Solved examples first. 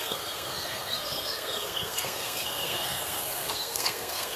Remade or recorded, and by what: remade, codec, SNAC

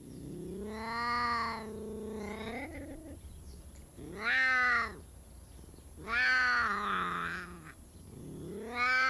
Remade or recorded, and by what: recorded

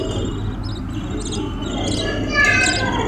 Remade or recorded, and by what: recorded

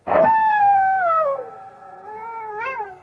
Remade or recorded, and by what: remade, codec, SNAC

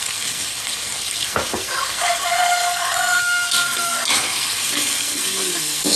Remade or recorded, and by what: remade, codec, SNAC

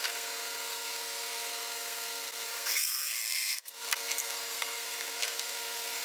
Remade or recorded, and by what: remade, codec, SNAC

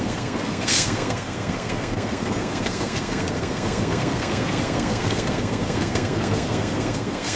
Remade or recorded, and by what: remade, codec, SNAC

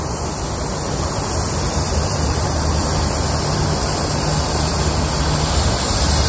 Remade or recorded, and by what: recorded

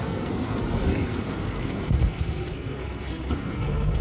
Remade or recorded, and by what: remade, codec, SNAC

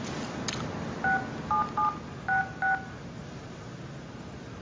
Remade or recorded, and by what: recorded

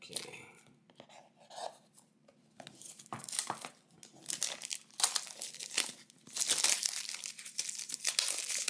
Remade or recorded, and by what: recorded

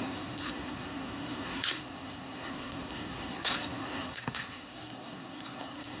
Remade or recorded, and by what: remade, codec, SNAC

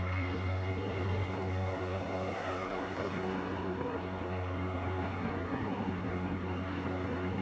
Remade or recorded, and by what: remade, codec, SNAC